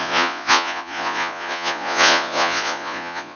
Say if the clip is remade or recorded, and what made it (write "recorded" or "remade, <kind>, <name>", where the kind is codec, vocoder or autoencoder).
remade, vocoder, Vocos